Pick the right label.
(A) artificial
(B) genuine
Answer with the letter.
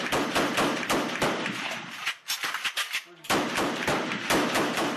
B